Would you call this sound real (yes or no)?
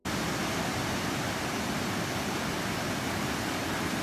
yes